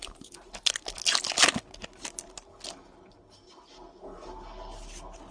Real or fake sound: real